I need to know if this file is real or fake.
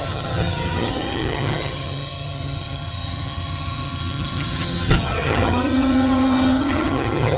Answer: fake